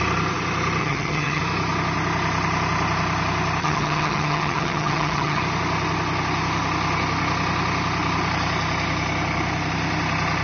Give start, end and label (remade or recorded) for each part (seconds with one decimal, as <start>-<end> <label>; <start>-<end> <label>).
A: 0.0-0.8 recorded; 0.8-1.4 remade; 1.4-3.6 recorded; 3.6-5.4 remade; 5.4-10.4 recorded